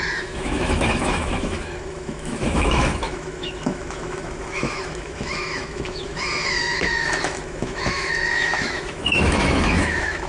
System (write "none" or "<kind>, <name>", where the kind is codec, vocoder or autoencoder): autoencoder, DAC-VAE